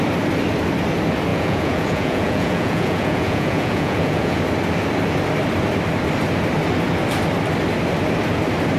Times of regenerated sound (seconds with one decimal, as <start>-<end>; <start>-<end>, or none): 1.3-4.4